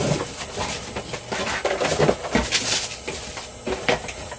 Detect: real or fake real